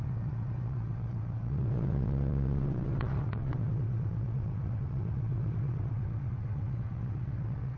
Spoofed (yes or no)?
yes